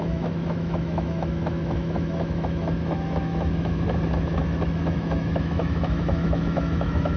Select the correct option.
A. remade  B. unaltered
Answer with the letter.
A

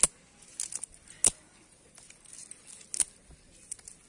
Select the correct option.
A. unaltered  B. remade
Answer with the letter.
A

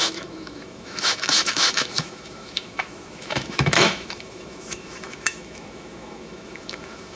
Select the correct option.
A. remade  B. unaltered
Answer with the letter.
A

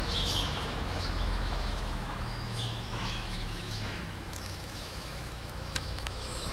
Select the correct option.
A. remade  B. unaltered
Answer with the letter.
A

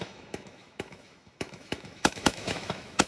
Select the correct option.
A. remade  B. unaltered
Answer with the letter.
A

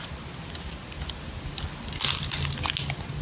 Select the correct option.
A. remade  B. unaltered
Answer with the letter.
B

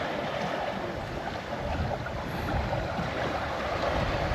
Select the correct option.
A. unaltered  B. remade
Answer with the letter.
A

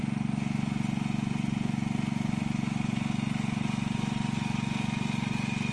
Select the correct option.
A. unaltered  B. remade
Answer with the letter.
A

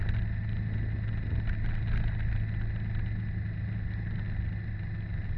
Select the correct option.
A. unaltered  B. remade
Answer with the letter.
A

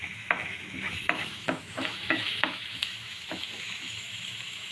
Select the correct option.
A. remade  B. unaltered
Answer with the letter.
A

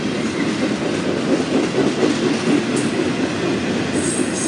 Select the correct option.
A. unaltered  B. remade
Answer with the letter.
A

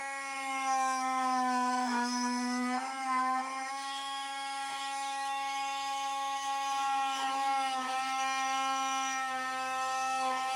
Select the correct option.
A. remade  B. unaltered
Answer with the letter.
A